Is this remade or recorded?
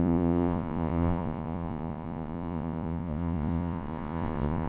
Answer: remade